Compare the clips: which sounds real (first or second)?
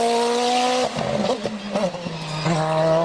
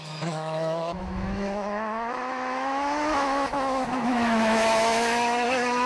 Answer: first